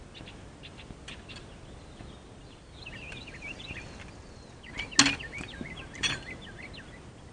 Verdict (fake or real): real